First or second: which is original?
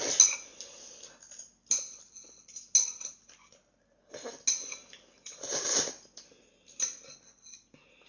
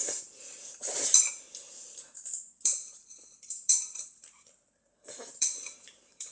first